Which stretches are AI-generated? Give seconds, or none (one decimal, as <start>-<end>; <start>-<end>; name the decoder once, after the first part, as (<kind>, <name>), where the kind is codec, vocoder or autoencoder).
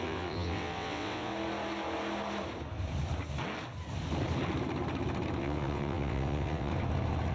0.0-1.3 (vocoder, WaveNeXt); 5.4-6.7